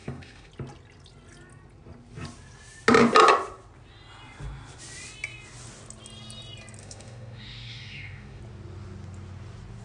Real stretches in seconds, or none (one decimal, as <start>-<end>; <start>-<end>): 0.5-6.8; 8.4-9.8